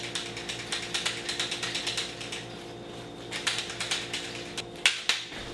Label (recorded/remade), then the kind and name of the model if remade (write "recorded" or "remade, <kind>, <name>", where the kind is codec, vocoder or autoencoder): recorded